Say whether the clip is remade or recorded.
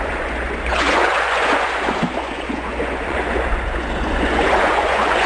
remade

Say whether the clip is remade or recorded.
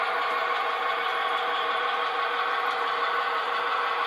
remade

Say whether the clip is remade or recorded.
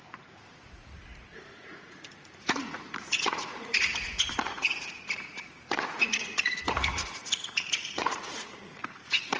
remade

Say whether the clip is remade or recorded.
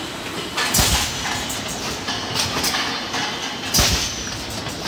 recorded